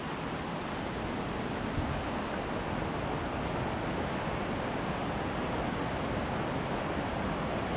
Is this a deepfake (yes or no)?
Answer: no